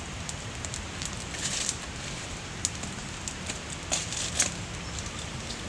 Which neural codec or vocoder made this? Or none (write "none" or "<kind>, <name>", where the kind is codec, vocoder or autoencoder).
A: none